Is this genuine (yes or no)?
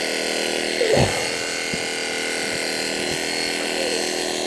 yes